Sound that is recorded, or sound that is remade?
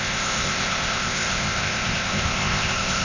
remade